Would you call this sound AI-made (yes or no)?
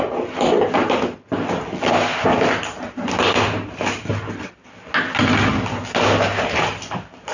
no